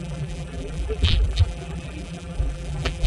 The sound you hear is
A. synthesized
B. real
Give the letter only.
A